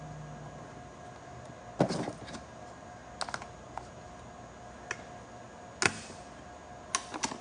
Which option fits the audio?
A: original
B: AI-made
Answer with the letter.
A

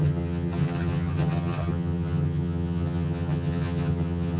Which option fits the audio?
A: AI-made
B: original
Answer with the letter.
A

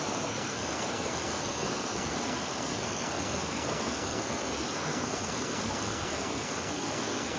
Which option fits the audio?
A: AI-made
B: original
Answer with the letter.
A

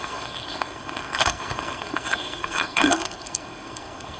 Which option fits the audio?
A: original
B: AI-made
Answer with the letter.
B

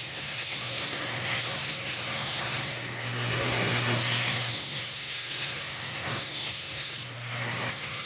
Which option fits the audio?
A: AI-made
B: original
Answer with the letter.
A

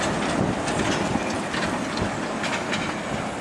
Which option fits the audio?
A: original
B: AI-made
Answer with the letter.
A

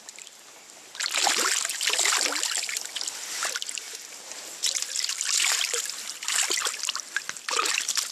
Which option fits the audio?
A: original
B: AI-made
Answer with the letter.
A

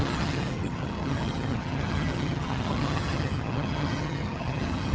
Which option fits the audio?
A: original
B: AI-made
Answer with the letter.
B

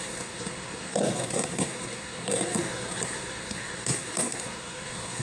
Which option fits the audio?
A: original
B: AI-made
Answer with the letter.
B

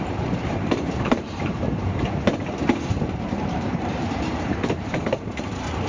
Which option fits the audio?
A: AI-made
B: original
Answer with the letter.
A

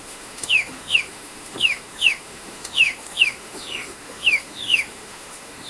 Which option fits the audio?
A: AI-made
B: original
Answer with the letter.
A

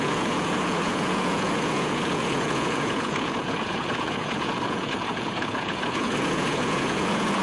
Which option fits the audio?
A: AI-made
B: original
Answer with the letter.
A